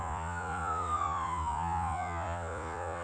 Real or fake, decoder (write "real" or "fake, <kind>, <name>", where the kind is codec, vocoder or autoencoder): fake, vocoder, Vocos